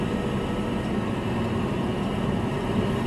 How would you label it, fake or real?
real